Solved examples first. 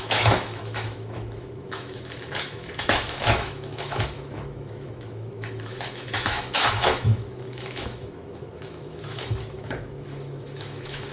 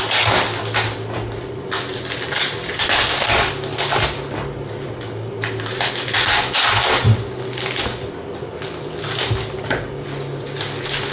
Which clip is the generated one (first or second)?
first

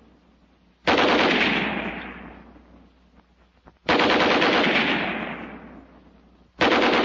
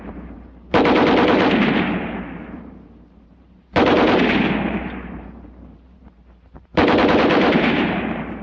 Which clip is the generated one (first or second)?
second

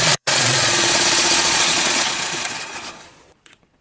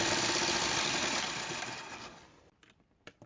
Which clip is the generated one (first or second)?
first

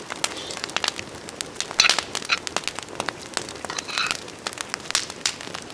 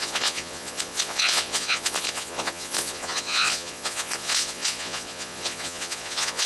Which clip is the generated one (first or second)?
second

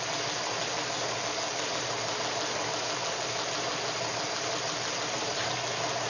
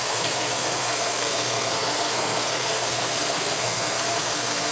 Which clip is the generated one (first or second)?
second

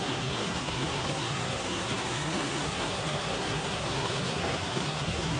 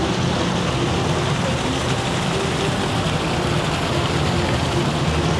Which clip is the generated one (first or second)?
first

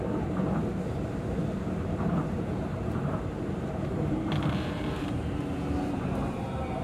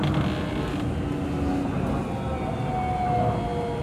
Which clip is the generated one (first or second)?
first